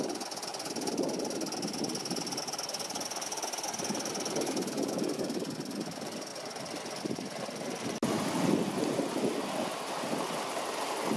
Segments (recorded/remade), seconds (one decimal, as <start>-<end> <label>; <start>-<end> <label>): 0.0-11.2 recorded